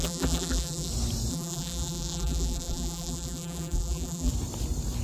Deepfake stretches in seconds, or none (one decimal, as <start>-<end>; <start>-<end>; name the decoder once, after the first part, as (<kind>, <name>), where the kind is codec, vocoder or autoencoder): 0.0-0.9 (vocoder, BigVGAN v2); 1.3-4.3